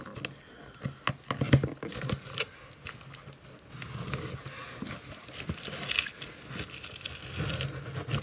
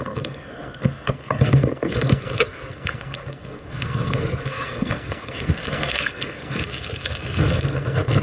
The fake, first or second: second